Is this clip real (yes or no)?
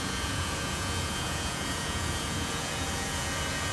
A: no